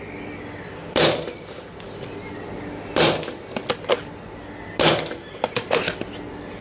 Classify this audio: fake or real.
real